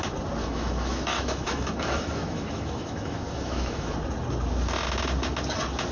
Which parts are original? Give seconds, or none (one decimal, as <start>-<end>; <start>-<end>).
0.0-0.4; 3.9-5.9